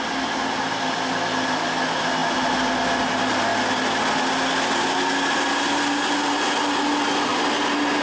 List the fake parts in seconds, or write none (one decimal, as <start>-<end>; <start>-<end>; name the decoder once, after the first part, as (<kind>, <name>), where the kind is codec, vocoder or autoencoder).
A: none